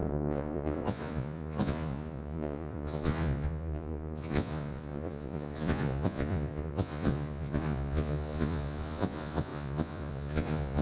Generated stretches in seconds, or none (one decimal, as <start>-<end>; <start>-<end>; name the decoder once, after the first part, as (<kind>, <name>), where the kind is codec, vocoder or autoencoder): 0.0-10.8 (vocoder, Vocos)